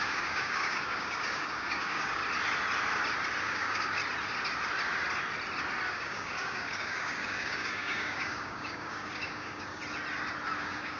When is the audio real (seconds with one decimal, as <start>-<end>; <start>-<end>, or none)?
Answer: 2.2-3.4; 4.0-5.9; 9.8-10.6